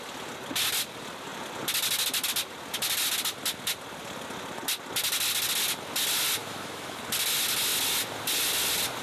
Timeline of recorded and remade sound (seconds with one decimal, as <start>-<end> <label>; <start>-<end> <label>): 0.0-6.4 recorded; 6.4-7.0 remade; 7.0-9.0 recorded